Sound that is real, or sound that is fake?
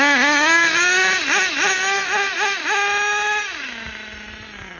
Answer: real